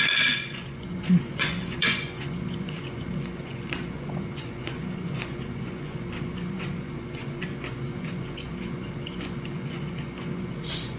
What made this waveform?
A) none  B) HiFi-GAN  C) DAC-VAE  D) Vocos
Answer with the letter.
D